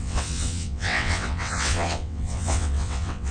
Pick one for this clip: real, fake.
fake